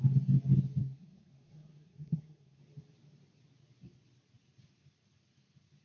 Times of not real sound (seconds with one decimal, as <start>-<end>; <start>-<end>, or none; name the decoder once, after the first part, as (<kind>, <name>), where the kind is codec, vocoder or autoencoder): 0.8-2.6 (codec, SNAC)